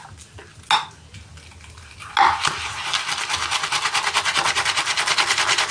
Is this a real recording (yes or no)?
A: yes